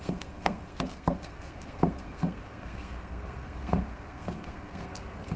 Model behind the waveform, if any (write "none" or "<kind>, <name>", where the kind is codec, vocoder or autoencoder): codec, SNAC